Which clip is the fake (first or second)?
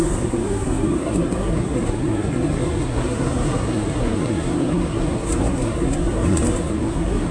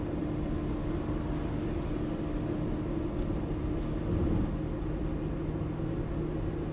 first